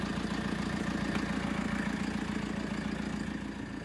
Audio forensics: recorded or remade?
recorded